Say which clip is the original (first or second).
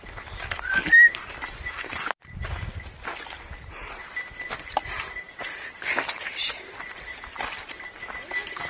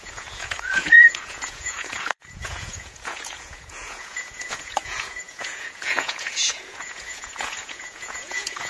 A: first